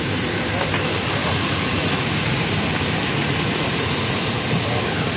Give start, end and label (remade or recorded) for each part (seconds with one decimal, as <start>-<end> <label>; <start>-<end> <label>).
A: 0.0-1.2 recorded; 1.2-2.4 remade; 2.4-3.2 recorded; 3.2-4.2 remade; 4.2-5.2 recorded